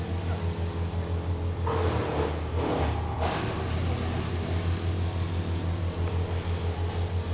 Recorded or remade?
recorded